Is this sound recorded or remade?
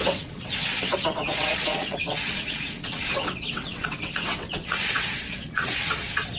remade